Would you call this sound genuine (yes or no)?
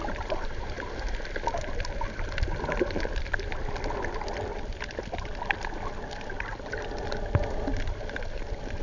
yes